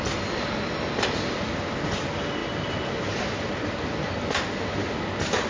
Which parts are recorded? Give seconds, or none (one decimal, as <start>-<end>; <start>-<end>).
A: 0.0-5.5